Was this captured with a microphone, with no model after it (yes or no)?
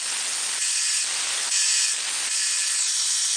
yes